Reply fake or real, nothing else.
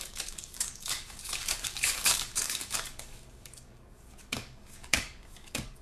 fake